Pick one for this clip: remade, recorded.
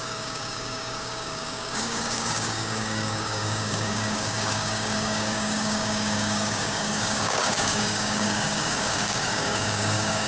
remade